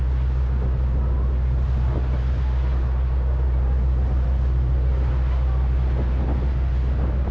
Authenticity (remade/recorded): recorded